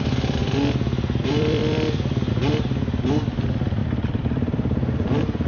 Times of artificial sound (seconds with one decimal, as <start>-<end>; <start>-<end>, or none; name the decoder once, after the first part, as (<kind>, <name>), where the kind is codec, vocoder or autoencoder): 0.0-0.4 (vocoder, BigVGAN v2); 1.2-5.5